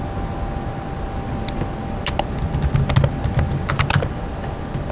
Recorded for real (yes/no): yes